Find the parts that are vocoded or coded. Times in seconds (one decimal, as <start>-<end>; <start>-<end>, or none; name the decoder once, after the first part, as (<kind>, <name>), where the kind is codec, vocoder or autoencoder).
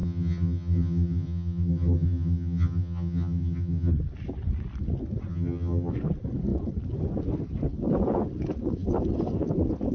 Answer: 0.0-3.9 (vocoder, HiFi-GAN); 5.3-5.9